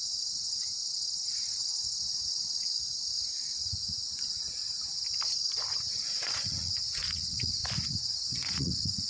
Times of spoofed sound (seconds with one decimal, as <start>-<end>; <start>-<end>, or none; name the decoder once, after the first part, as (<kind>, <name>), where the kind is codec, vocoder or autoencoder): 0.0-0.8 (vocoder, Vocos); 1.3-4.6; 5.8-7.6; 8.3-9.1